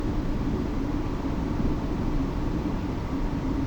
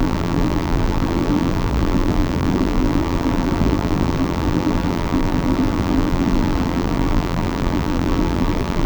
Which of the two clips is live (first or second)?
first